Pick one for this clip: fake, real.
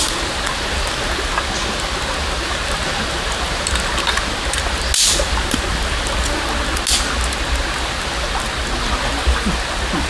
real